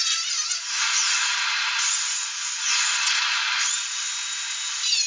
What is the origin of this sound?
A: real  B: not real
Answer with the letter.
A